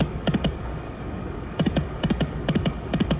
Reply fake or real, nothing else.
fake